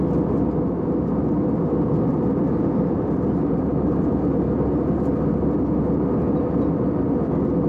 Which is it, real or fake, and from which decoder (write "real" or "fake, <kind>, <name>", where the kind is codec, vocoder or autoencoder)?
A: real